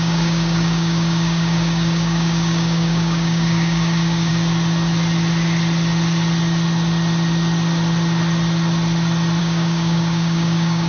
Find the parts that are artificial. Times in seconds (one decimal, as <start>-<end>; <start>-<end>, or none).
0.0-4.3; 9.4-10.9